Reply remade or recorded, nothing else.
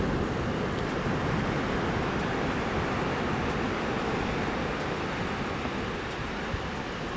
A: recorded